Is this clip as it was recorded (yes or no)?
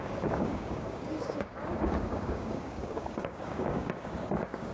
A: no